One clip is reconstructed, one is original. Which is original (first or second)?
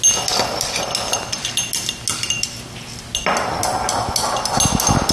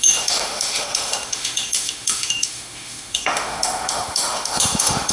first